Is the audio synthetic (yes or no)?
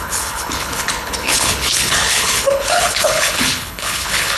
yes